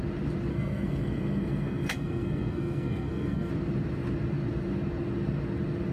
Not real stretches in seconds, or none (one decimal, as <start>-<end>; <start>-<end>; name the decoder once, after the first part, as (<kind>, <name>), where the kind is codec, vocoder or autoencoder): 0.5-3.5 (codec, SNAC)